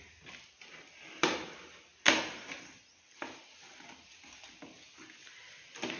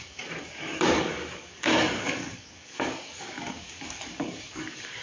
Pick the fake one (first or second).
second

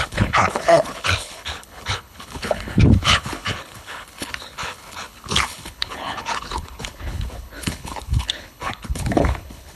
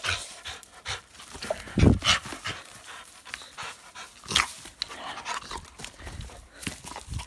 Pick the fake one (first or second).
first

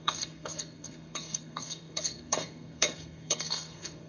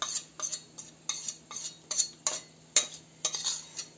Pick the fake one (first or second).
first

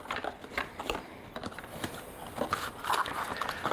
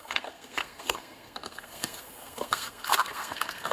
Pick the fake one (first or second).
second